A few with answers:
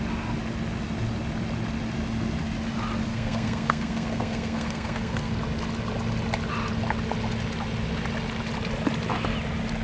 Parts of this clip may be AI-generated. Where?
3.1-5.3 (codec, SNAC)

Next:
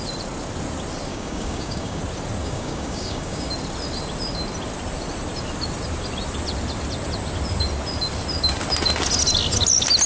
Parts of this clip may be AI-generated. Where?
1.1-2.0 (codec, DAC); 2.4-3.5

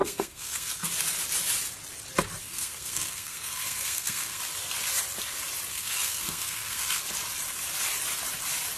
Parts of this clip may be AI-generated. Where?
0.0-0.9 (codec, SNAC); 2.4-4.4; 5.7-7.0

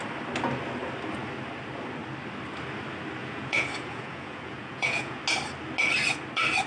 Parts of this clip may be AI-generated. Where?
3.2-5.2 (vocoder, Vocos)

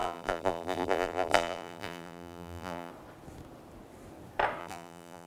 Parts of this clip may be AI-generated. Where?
0.0-2.9 (vocoder, BigVGAN v2); 4.6-5.3

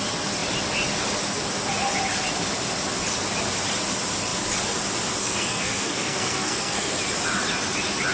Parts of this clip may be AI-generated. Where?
5.2-7.0 (codec, SNAC)

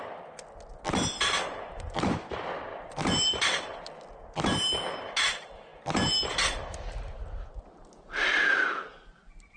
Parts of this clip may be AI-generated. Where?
2.7-4.8 (vocoder, BigVGAN v2); 5.7-7.6

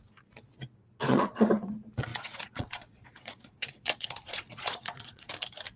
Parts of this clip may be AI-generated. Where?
1.1-1.7 (vocoder, Vocos); 2.1-5.3